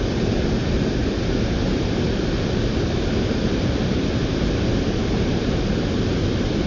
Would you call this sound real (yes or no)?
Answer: yes